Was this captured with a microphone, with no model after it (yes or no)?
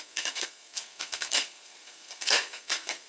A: no